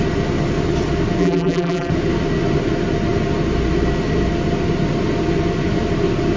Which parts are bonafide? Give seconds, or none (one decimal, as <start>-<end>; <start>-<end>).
0.0-1.2; 1.9-6.4